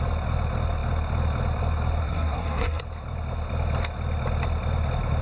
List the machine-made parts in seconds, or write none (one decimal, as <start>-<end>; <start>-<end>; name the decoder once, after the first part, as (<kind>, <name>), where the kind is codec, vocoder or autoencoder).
2.0-2.8 (codec, SNAC)